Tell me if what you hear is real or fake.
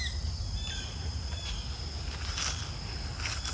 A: real